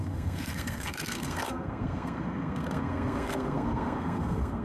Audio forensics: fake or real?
fake